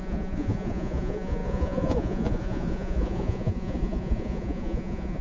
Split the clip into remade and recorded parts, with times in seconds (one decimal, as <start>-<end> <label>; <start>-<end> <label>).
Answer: 0.0-5.2 remade